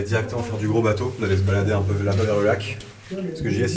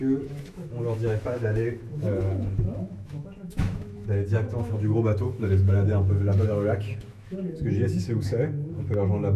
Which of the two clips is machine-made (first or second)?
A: second